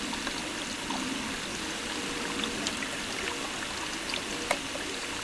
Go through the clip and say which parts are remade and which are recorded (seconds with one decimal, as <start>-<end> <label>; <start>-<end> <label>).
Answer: 0.0-5.2 recorded